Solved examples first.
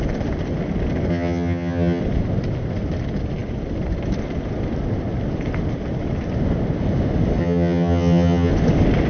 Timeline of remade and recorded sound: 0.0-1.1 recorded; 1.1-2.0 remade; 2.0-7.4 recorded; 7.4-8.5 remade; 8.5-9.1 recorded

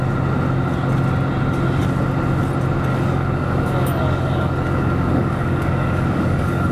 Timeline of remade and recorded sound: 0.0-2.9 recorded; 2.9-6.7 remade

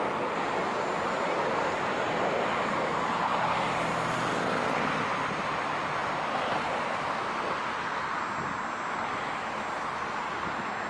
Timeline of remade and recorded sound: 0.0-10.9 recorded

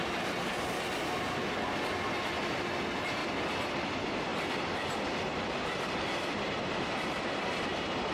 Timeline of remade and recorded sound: 0.0-4.3 recorded; 4.3-4.8 remade; 4.8-5.3 recorded; 5.3-8.1 remade

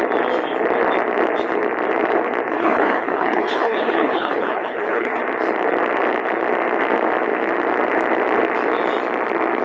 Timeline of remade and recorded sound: 0.0-2.5 recorded; 2.5-5.2 remade; 5.2-9.6 recorded